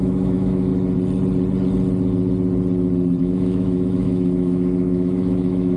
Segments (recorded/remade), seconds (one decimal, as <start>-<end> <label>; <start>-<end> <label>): 0.0-0.7 remade; 0.7-3.2 recorded; 3.2-5.8 remade